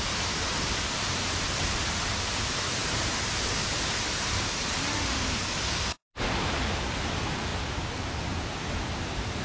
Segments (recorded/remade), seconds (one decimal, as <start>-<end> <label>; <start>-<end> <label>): 0.0-7.5 remade; 7.5-8.4 recorded; 8.4-9.4 remade